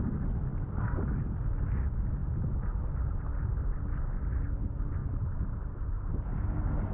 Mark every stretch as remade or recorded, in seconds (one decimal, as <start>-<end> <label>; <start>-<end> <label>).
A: 0.0-6.9 recorded